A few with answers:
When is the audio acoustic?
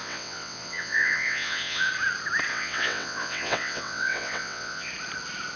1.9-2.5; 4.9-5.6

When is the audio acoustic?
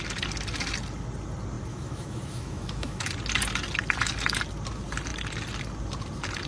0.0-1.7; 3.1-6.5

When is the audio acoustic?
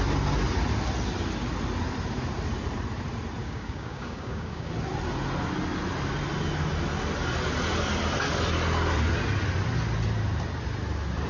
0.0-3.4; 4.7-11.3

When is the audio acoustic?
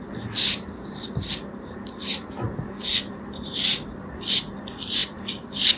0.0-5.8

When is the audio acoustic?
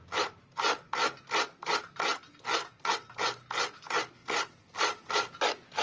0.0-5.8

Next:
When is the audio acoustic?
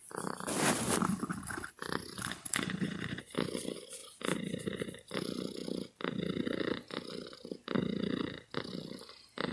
0.0-1.0; 1.7-2.2; 3.2-9.5